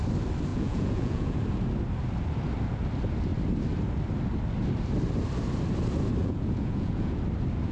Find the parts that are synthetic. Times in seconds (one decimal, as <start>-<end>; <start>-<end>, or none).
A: 0.5-1.4; 6.2-7.2

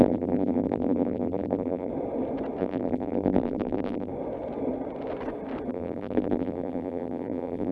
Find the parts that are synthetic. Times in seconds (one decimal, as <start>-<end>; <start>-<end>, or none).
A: 0.0-1.9; 2.6-4.1; 5.7-7.7

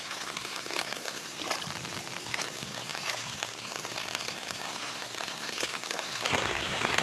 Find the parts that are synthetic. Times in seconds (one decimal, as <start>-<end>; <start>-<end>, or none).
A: 0.0-1.4; 2.2-7.0

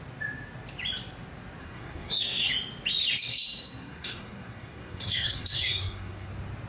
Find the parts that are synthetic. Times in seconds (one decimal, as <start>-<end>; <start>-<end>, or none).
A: 1.6-2.5; 3.3-6.3

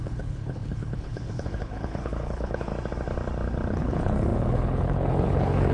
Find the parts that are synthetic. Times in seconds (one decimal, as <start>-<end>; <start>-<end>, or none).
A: 0.0-2.7; 3.7-5.7